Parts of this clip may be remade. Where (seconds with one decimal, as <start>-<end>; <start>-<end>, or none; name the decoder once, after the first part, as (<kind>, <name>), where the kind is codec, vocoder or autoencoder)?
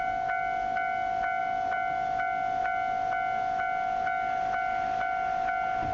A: none